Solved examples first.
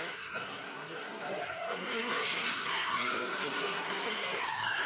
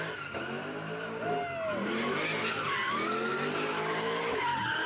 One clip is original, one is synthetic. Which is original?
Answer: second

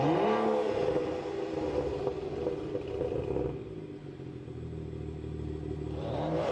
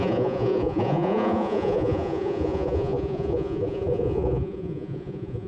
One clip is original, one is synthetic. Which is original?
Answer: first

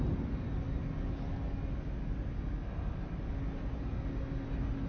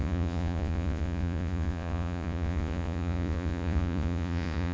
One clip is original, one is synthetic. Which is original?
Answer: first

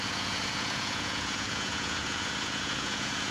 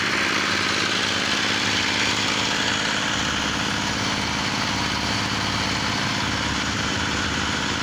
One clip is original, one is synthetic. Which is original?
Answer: second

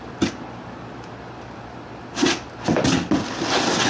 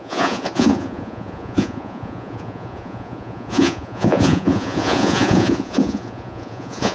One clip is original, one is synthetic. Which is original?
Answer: first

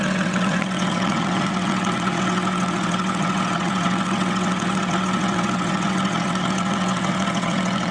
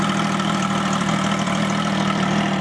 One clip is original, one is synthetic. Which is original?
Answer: second